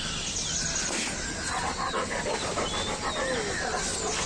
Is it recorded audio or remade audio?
recorded